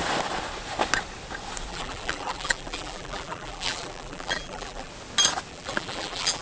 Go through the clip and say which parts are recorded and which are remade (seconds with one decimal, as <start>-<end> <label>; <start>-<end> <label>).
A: 0.0-1.7 recorded; 1.7-4.9 remade; 4.9-5.5 recorded; 5.5-6.4 remade